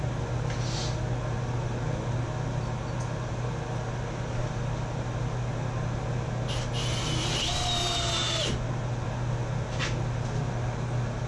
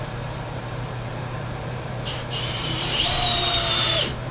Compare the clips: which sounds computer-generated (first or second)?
second